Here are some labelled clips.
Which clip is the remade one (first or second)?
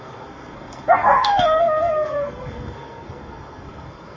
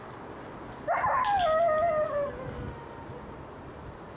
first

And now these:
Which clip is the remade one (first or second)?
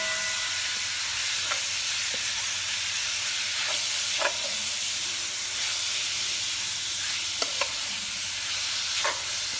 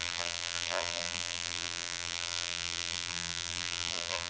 second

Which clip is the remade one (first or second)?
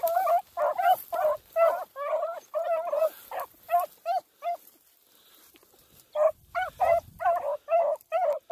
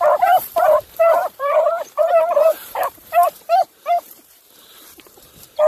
second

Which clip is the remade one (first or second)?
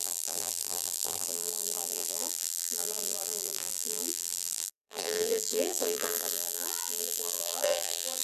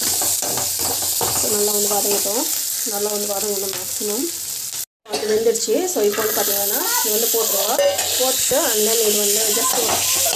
first